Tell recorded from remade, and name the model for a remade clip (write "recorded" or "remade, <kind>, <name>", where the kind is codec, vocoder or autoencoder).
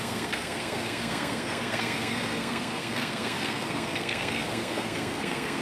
remade, codec, SNAC